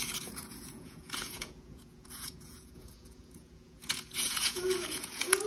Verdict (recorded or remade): remade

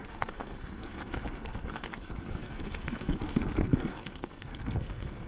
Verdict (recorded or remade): remade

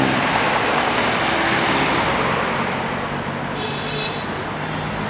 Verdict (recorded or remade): recorded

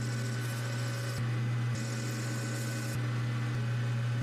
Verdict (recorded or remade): recorded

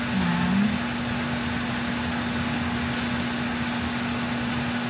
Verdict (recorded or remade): recorded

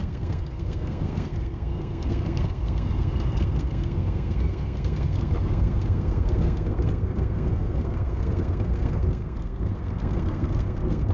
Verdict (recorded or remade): remade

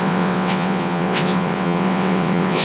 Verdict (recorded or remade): remade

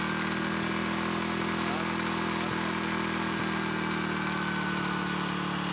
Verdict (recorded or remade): recorded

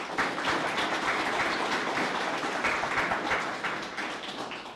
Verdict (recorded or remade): recorded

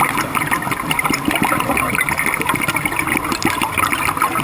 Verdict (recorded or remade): recorded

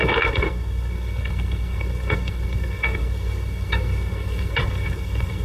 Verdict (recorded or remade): remade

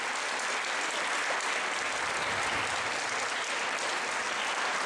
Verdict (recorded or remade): recorded